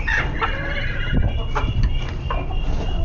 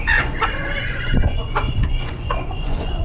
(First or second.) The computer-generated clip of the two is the second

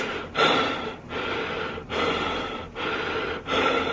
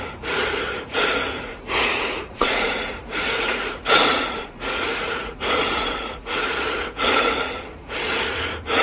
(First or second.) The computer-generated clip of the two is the second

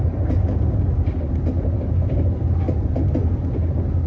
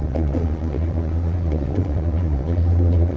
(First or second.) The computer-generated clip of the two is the second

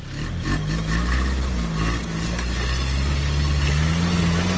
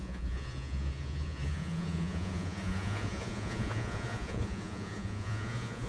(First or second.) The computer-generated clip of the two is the second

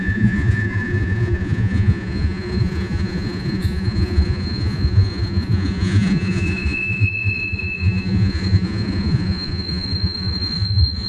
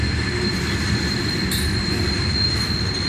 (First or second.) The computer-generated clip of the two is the first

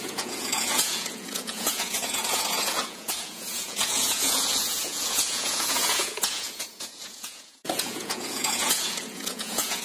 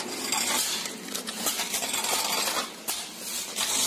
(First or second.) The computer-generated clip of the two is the first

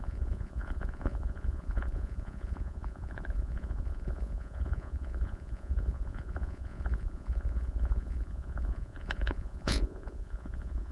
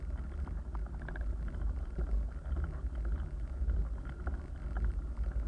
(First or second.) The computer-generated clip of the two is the first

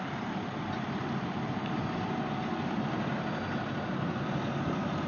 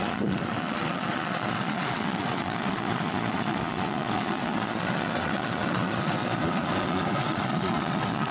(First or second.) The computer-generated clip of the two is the second